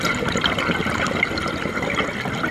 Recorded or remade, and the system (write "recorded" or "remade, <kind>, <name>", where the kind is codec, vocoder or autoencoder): remade, vocoder, BigVGAN v2